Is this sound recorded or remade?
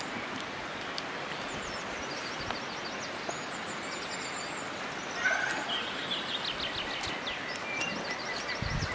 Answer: recorded